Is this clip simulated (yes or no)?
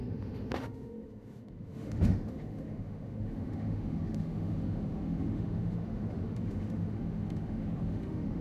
yes